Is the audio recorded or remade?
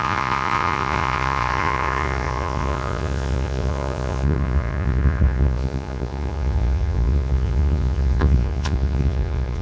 remade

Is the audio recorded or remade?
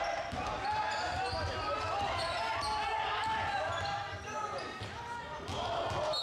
recorded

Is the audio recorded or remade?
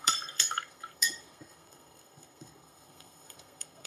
remade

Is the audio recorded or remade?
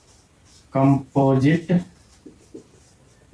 remade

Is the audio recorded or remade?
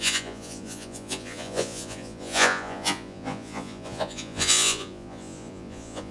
remade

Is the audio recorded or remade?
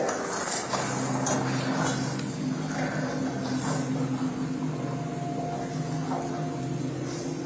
recorded